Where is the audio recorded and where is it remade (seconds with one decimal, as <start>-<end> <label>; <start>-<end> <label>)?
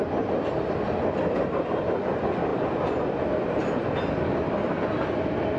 0.0-5.6 recorded